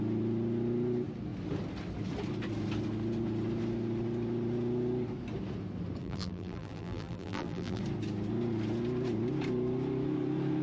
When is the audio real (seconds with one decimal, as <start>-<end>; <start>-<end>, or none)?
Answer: 0.0-6.0; 7.8-10.6